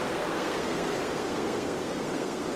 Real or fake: fake